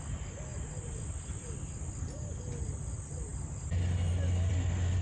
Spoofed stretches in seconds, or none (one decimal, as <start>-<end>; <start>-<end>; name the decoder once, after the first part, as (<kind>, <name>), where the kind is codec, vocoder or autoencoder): none